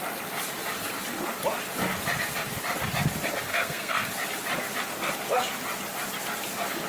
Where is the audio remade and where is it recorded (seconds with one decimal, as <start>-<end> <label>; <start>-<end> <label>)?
0.0-3.5 recorded; 3.5-4.1 remade; 4.1-6.9 recorded